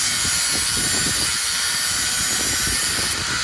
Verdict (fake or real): real